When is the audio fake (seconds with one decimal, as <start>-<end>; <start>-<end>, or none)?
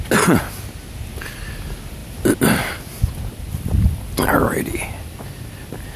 none